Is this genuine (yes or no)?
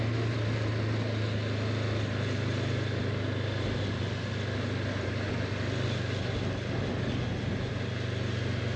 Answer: yes